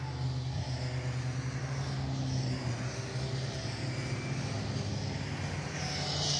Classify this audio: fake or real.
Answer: real